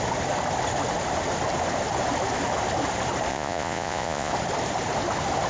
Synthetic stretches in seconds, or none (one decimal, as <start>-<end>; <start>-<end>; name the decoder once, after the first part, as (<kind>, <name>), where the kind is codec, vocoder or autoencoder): 3.3-4.3 (vocoder, Vocos)